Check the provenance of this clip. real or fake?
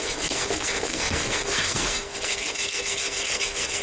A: fake